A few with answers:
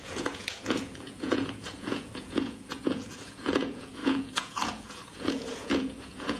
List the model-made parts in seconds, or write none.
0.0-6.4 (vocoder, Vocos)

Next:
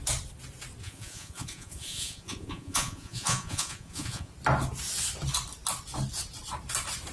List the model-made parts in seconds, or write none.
0.8-4.3 (vocoder, Vocos)

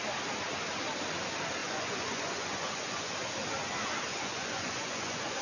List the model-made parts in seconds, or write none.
1.6-3.1 (vocoder, Vocos); 4.1-5.4

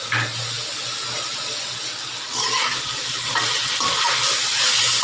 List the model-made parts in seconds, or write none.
none

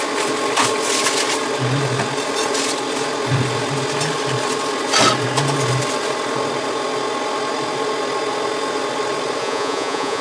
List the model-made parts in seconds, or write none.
9.4-10.2 (vocoder, Vocos)

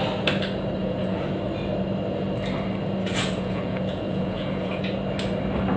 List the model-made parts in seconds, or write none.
0.8-1.4 (vocoder, Vocos); 3.0-4.8

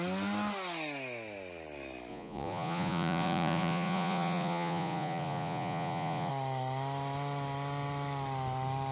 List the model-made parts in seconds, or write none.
2.1-6.3 (vocoder, Vocos)

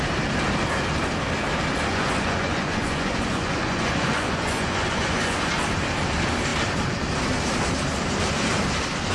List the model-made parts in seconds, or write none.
1.9-5.5 (vocoder, Vocos)